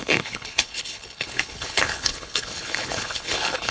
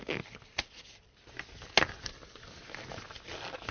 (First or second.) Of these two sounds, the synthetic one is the first